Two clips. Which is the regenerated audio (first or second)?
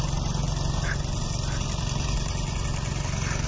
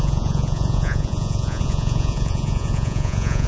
second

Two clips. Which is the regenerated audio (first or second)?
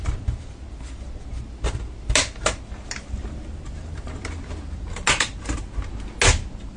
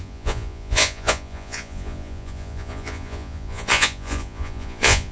second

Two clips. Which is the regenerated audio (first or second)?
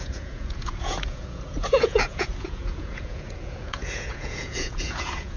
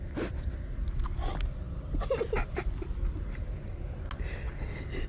first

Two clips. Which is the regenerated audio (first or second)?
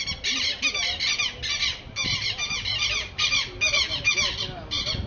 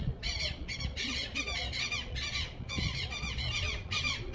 second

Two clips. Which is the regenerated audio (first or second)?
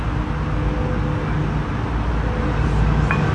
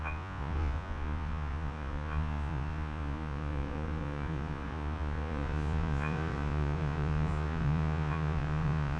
second